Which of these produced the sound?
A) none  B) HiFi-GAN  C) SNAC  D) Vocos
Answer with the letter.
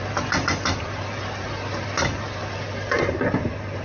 A